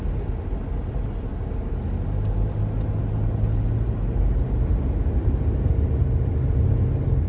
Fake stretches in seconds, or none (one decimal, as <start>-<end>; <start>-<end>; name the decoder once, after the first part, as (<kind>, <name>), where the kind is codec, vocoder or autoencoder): none